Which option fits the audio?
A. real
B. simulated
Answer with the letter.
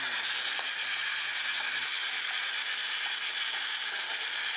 A